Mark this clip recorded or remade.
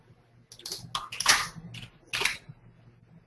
recorded